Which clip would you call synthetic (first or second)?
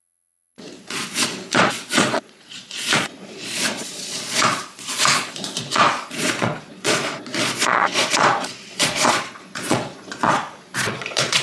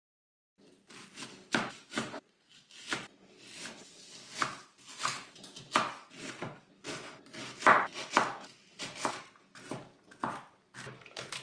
first